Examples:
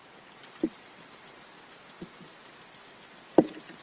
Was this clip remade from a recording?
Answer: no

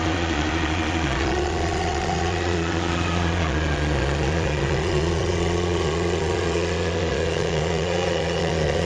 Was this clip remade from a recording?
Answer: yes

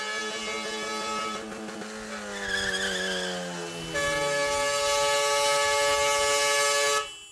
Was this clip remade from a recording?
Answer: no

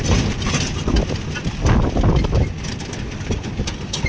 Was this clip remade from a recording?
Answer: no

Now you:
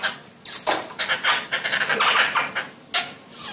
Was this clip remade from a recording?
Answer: no